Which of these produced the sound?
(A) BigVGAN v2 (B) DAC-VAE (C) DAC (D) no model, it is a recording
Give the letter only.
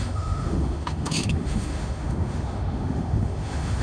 B